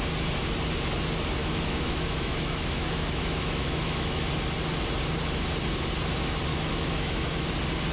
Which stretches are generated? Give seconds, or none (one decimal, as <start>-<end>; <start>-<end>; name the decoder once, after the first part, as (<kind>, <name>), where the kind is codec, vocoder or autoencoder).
1.4-4.2 (autoencoder, DAC-VAE); 6.5-7.5